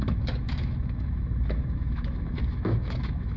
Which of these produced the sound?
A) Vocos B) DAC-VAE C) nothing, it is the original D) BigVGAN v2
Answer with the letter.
B